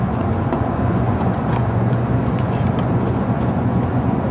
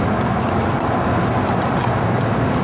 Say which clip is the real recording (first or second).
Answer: second